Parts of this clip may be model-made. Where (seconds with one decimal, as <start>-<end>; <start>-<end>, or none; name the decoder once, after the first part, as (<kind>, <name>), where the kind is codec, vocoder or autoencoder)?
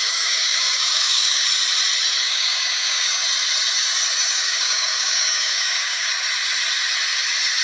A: 0.0-1.5 (codec, DAC); 2.2-3.2; 4.3-6.1